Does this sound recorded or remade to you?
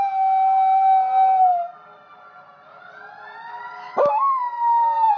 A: recorded